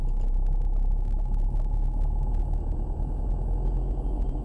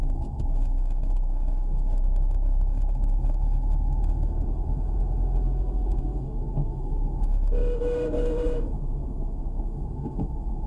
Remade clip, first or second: second